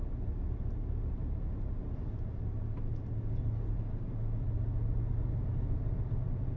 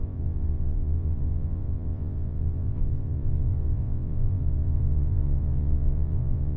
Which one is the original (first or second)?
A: first